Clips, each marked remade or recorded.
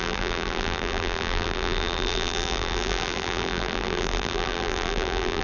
remade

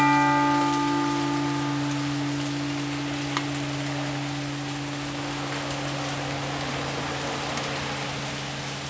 recorded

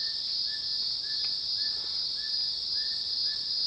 recorded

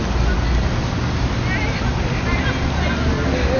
recorded